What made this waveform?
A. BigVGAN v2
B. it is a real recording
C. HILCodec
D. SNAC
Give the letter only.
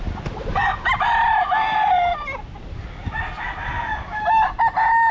B